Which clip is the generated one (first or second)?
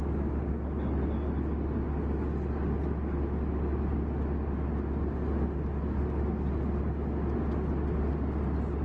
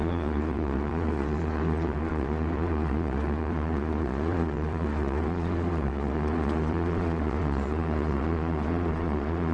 second